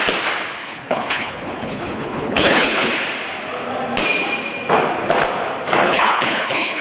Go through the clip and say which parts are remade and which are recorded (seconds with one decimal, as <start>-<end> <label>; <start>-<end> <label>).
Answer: 0.0-0.6 recorded; 0.6-2.9 remade; 2.9-5.8 recorded; 5.8-6.8 remade

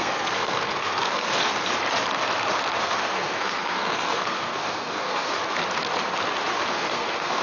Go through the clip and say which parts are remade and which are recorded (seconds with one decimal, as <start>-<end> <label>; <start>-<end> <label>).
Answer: 0.0-1.4 remade; 1.4-2.8 recorded; 2.8-5.4 remade; 5.4-6.7 recorded; 6.7-7.4 remade

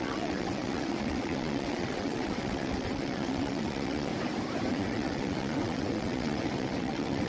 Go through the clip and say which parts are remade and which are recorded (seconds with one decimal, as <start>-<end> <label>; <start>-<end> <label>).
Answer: 0.0-4.1 remade; 4.1-4.7 recorded; 4.7-7.3 remade

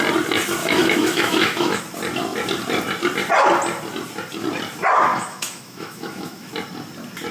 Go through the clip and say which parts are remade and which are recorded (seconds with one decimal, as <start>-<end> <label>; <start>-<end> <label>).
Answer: 0.0-0.6 recorded; 0.6-1.8 remade; 1.8-5.1 recorded; 5.1-6.5 remade; 6.5-7.3 recorded

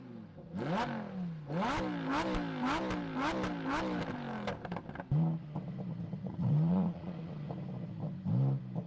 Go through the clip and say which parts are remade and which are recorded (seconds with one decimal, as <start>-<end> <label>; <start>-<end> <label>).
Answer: 0.0-6.2 recorded; 6.2-7.3 remade; 7.3-8.9 recorded